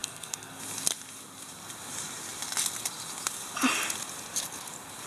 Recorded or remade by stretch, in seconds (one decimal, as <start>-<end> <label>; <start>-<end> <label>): 0.0-0.6 remade; 0.6-5.1 recorded